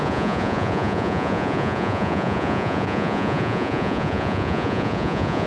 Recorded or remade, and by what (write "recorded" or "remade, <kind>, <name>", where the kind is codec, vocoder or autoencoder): remade, vocoder, Vocos